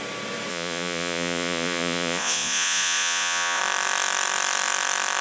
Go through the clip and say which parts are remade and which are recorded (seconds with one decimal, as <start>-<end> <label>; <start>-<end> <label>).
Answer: 0.0-0.5 recorded; 0.5-3.6 remade; 3.6-5.2 recorded